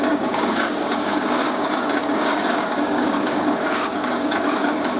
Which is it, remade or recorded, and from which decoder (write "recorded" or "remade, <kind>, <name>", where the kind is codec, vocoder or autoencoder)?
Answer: remade, codec, DAC